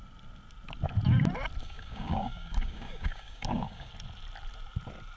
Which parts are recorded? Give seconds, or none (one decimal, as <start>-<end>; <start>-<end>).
0.0-1.6; 3.9-5.2